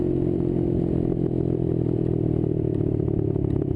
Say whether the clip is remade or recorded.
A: recorded